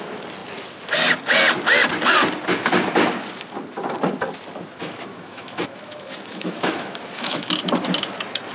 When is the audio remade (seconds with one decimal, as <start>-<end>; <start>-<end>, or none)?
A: 4.8-7.6